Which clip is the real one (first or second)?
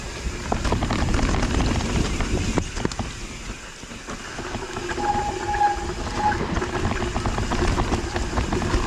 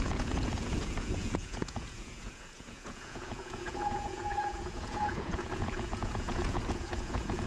first